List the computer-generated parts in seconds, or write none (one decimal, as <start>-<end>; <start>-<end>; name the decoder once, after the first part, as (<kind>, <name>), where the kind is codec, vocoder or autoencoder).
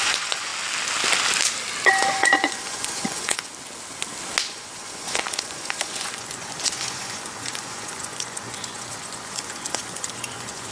0.0-0.5 (vocoder, Vocos); 1.9-3.5; 4.4-10.7